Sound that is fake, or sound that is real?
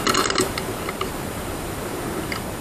real